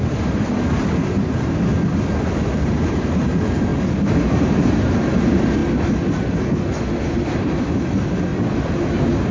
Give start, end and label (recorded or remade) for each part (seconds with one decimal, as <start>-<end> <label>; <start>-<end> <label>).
0.0-1.7 remade; 1.7-2.5 recorded; 2.5-3.7 remade; 3.7-4.4 recorded; 4.4-5.6 remade; 5.6-7.1 recorded; 7.1-8.3 remade; 8.3-9.3 recorded